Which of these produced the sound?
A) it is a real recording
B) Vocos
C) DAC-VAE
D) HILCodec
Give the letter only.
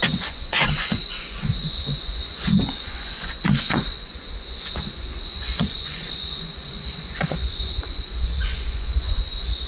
B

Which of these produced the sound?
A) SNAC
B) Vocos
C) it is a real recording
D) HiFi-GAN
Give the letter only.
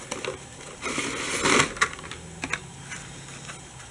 C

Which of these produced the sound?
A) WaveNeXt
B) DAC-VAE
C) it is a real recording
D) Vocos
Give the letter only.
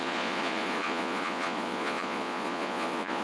D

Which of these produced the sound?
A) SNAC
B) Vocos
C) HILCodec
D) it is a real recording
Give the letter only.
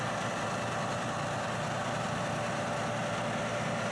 D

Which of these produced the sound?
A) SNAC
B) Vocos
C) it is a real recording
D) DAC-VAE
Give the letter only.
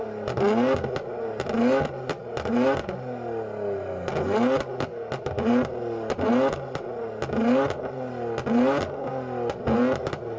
C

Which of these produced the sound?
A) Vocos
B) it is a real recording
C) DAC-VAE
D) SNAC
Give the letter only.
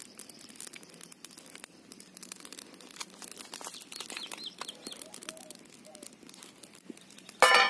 B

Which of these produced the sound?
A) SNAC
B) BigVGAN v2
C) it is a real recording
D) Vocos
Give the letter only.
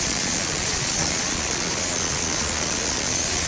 D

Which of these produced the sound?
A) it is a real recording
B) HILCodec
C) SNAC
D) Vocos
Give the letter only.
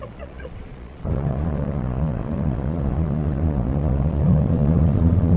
D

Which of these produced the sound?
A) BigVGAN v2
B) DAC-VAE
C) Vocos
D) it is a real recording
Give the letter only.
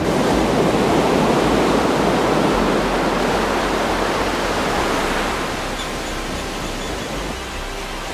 D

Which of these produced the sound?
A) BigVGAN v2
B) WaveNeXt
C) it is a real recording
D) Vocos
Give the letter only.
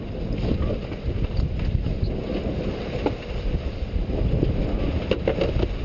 C